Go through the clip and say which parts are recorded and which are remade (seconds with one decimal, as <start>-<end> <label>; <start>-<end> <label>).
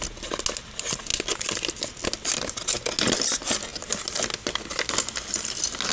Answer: 0.0-5.9 recorded